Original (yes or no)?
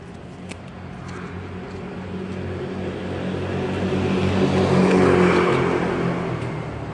yes